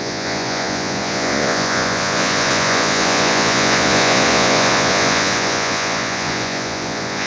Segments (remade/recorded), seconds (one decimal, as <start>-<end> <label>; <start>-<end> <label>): 0.0-7.3 remade